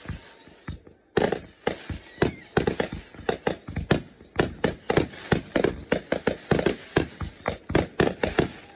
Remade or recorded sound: recorded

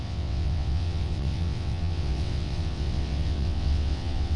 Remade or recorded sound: remade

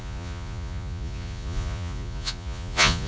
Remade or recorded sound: remade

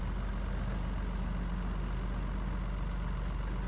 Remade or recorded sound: recorded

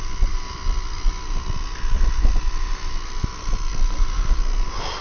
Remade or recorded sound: recorded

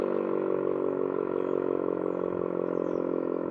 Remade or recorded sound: remade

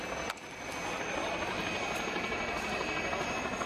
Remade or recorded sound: recorded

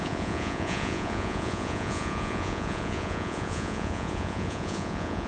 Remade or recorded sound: remade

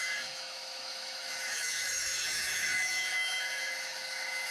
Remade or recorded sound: remade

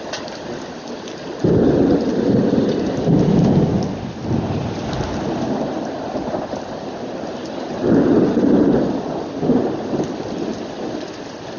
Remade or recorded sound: recorded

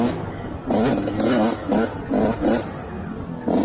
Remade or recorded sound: recorded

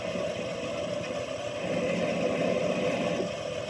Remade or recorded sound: recorded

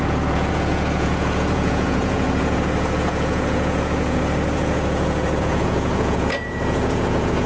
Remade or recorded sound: remade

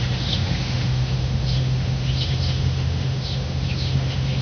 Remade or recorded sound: remade